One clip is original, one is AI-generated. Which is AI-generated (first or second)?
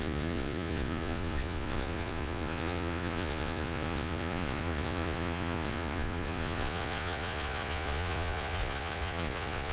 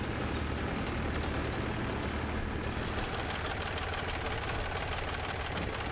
first